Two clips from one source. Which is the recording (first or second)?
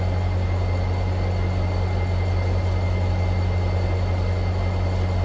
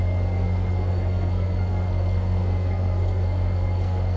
first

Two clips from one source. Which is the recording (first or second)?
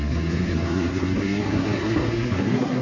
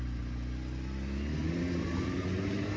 second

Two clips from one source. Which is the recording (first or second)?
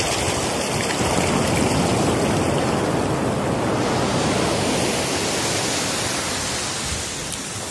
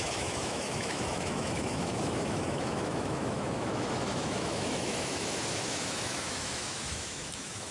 first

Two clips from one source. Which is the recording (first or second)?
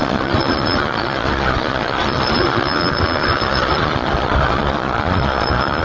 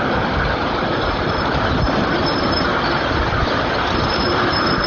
second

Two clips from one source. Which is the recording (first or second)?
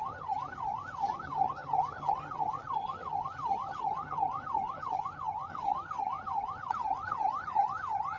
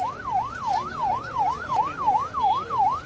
second